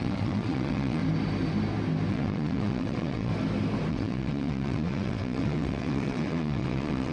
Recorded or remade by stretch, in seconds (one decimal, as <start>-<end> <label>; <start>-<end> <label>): 0.0-1.0 remade; 1.0-2.1 recorded; 2.1-3.3 remade; 3.3-3.9 recorded; 3.9-7.1 remade